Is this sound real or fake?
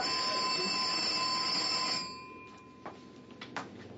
real